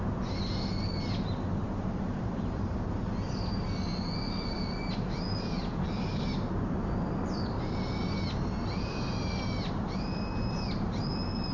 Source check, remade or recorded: recorded